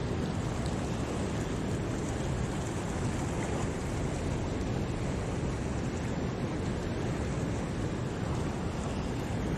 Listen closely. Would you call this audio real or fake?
real